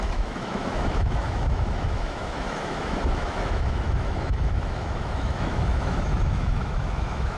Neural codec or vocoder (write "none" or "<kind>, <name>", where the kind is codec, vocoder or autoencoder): autoencoder, DAC-VAE